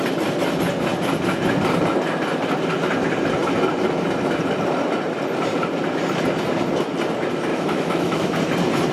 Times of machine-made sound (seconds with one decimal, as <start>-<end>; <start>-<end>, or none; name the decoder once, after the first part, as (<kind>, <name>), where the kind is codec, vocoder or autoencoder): 7.5-8.4 (autoencoder, DAC-VAE)